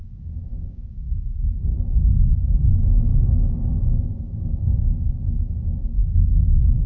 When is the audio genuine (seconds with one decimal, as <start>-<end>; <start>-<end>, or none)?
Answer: none